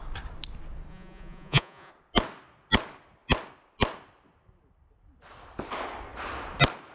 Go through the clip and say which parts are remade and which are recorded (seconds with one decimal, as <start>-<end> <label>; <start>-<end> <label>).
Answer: 0.0-0.9 recorded; 0.9-1.9 remade; 1.9-6.9 recorded